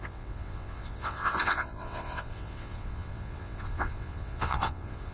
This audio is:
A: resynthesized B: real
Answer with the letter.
A